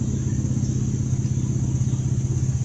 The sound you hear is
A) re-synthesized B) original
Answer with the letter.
B